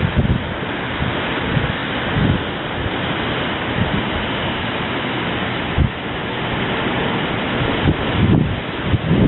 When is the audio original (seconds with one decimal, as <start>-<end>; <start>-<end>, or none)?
0.0-9.3